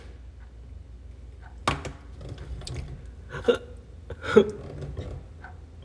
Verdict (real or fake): real